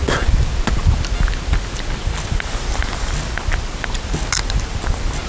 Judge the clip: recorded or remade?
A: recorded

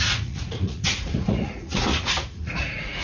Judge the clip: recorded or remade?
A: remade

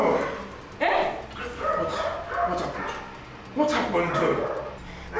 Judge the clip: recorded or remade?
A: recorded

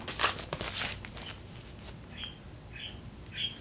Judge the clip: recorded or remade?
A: recorded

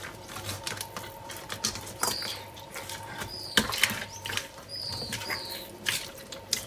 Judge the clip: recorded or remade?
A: remade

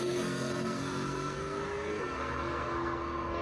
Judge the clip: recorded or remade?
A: remade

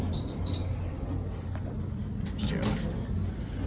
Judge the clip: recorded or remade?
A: recorded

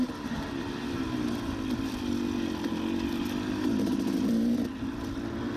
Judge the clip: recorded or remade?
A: recorded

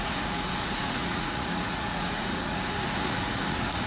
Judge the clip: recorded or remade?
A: remade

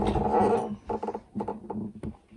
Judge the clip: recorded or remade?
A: recorded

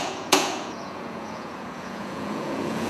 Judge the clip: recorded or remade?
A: remade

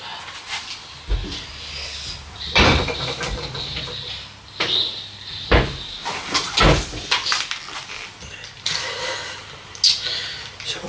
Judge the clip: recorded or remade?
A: recorded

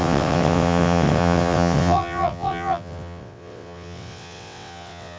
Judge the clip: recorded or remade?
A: remade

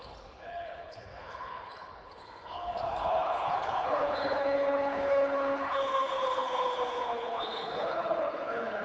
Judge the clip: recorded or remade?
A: remade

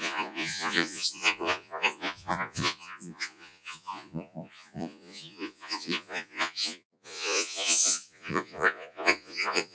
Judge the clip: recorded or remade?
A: remade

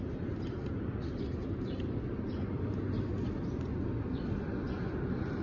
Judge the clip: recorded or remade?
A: recorded